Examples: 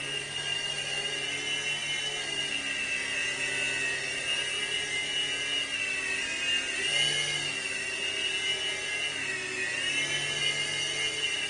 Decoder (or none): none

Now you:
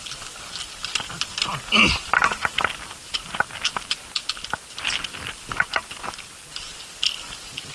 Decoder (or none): none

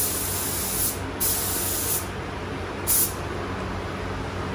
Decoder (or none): none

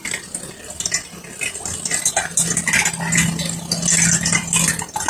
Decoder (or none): none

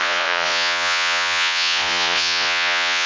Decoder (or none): vocoder, Vocos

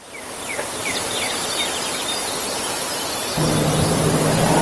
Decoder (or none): vocoder, BigVGAN v2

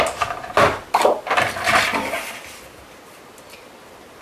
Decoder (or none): none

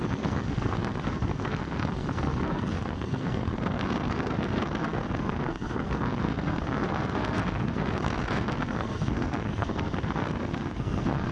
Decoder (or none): codec, SNAC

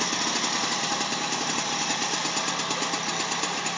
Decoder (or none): none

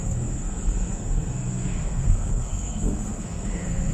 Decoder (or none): codec, SNAC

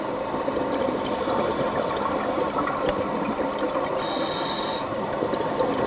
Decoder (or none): none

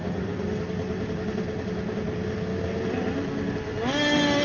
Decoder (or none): none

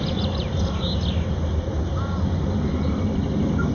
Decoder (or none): none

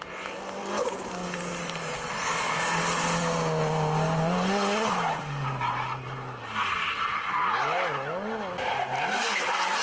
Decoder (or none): none